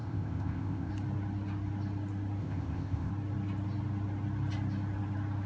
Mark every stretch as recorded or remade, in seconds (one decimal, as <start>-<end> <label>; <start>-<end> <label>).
0.0-0.9 remade; 0.9-2.4 recorded; 2.4-3.1 remade; 3.1-5.5 recorded